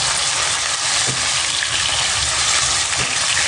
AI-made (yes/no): no